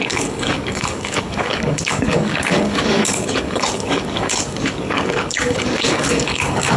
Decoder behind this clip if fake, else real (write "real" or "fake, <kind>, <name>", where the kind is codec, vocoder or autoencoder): fake, codec, DAC